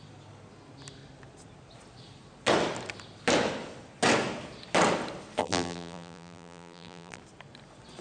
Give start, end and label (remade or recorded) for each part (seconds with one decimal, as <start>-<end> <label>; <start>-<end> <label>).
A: 0.0-5.4 recorded; 5.4-7.2 remade; 7.2-8.0 recorded